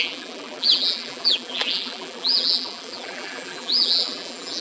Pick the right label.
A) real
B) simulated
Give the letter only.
B